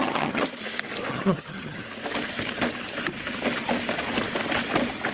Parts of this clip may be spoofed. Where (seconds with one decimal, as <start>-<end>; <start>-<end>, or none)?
0.0-0.4; 1.1-1.8